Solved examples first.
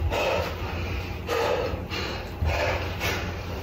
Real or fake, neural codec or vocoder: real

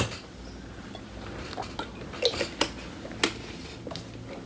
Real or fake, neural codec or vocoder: real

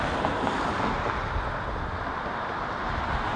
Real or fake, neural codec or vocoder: real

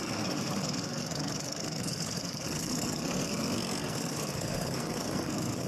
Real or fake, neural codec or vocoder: fake, codec, SNAC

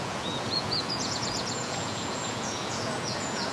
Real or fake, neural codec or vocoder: fake, vocoder, Vocos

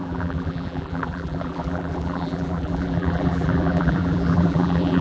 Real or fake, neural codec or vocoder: fake, vocoder, BigVGAN v2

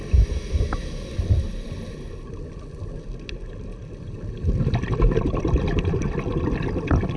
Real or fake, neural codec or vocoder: real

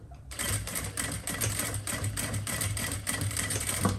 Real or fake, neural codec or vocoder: fake, vocoder, BigVGAN v2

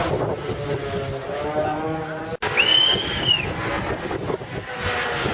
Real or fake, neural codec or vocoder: real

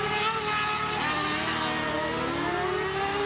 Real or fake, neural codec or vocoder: real